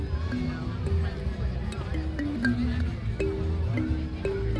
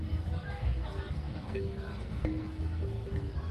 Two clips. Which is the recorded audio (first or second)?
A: first